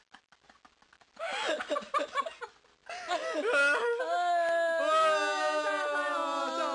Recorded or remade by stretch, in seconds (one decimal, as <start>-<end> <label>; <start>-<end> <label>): 0.0-6.7 recorded